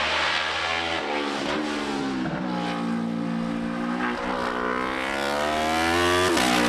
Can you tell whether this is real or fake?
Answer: real